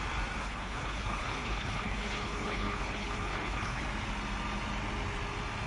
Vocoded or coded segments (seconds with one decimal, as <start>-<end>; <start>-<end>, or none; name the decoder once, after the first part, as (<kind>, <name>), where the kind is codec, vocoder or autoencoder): 0.4-3.8 (codec, HILCodec)

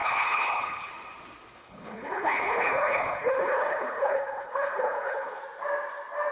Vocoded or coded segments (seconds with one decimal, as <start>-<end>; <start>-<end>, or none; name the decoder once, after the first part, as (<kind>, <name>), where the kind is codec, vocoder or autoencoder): 0.0-0.9 (codec, HILCodec); 1.6-5.4

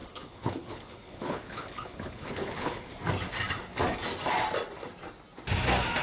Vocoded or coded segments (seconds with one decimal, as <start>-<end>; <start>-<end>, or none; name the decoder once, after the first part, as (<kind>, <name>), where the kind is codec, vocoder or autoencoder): 0.0-2.9 (codec, HILCodec)

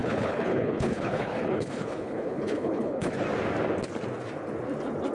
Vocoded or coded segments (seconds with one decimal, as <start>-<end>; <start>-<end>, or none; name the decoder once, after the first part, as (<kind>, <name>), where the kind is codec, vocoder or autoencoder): 0.0-3.1 (codec, HILCodec)

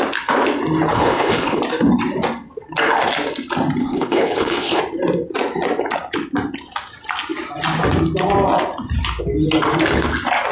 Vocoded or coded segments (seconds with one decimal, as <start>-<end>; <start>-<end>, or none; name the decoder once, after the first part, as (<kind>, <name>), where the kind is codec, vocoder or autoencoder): 0.9-1.6 (codec, HILCodec); 3.8-4.8

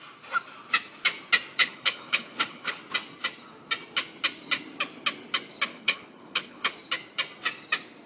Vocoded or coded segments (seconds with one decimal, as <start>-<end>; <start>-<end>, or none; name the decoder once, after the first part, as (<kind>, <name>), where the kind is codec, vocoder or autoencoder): 1.6-2.8 (codec, HILCodec); 5.7-6.7

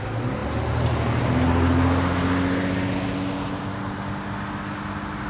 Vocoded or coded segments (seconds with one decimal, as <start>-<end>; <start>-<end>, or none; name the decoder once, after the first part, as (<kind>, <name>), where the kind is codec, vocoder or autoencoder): none